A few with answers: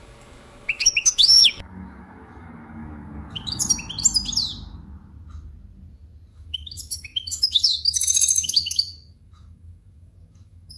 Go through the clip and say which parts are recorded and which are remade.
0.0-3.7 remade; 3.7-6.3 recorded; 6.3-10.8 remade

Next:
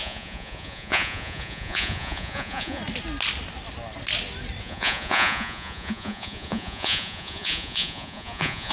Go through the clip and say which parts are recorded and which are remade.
0.0-2.8 remade; 2.8-4.6 recorded; 4.6-8.7 remade